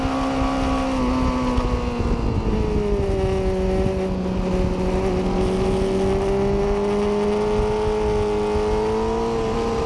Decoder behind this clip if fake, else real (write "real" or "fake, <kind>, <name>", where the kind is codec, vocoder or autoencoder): real